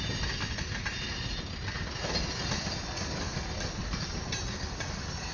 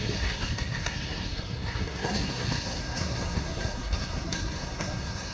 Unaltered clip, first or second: first